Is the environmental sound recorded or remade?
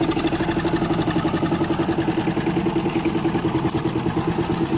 recorded